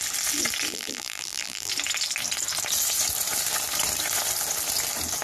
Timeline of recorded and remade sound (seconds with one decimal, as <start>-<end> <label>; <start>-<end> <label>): 0.0-0.7 recorded; 0.7-1.7 remade; 1.7-5.2 recorded